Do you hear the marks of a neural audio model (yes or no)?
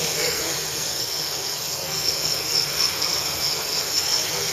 yes